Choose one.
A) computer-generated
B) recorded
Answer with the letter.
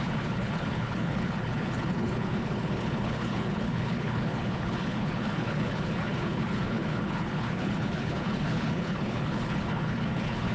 A